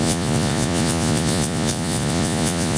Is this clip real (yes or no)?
no